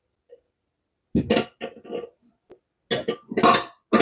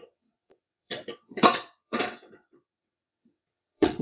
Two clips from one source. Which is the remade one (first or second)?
second